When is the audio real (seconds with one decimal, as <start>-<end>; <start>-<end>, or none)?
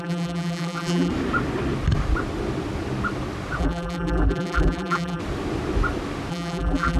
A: 1.1-3.6; 5.2-6.3